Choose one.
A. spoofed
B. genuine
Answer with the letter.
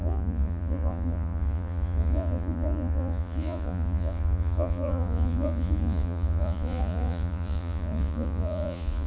A